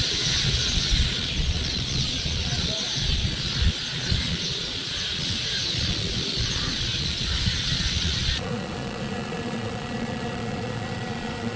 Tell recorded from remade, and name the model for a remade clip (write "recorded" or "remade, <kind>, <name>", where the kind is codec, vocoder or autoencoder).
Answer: remade, vocoder, Vocos